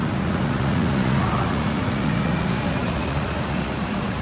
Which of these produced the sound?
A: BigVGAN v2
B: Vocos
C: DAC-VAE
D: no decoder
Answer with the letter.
B